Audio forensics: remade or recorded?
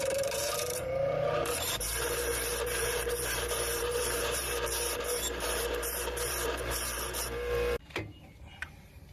remade